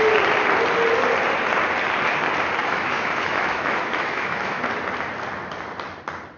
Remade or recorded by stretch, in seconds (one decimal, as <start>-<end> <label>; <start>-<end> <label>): 0.0-2.6 recorded; 2.6-4.6 remade; 4.6-6.4 recorded